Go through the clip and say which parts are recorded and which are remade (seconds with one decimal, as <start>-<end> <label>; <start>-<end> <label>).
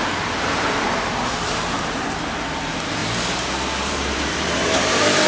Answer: 0.0-3.0 remade; 3.0-3.8 recorded; 3.8-5.3 remade